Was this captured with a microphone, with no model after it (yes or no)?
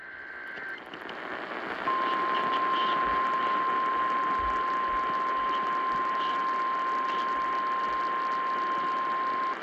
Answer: yes